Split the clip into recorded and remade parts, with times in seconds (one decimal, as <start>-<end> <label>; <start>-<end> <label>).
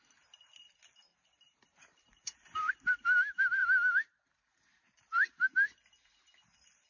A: 0.0-1.1 recorded; 1.1-2.7 remade; 2.7-3.6 recorded; 3.6-5.4 remade; 5.4-6.9 recorded